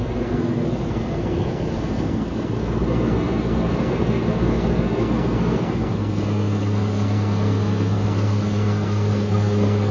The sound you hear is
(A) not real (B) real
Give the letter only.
A